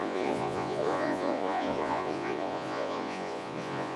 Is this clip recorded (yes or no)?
no